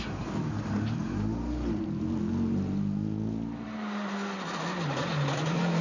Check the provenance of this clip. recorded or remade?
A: recorded